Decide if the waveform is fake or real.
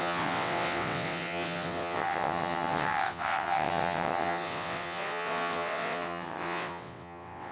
fake